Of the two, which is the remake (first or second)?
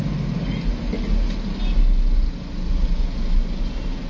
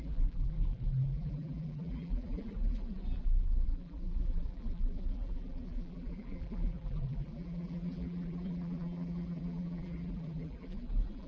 second